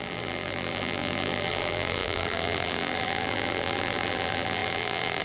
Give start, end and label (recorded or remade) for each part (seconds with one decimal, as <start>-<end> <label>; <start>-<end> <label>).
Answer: 0.0-5.2 remade